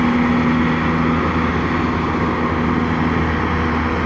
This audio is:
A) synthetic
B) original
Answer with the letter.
B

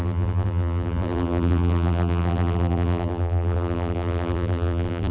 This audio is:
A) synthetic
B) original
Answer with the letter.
A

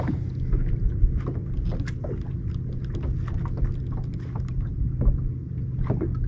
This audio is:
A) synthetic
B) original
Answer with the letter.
B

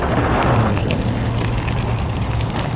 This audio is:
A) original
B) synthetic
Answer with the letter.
A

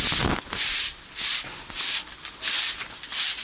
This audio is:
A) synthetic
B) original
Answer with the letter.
B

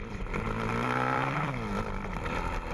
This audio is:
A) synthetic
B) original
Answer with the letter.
A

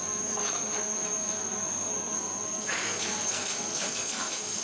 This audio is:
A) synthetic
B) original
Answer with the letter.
A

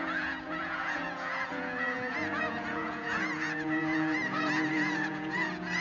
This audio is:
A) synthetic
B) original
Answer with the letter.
A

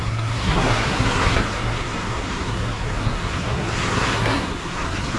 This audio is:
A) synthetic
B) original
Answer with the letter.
A